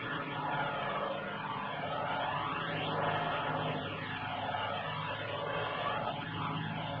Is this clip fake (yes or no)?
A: no